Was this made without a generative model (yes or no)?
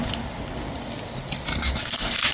no